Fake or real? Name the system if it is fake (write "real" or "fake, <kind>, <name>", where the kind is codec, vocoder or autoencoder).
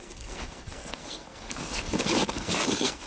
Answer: fake, codec, SNAC